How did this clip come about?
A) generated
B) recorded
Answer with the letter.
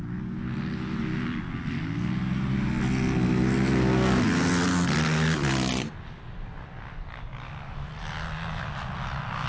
B